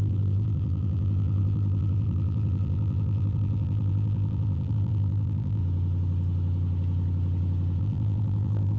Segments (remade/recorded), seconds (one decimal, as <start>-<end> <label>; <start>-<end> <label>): 0.0-5.6 remade; 5.6-7.8 recorded; 7.8-8.8 remade